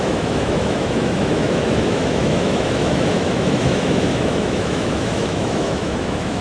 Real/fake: fake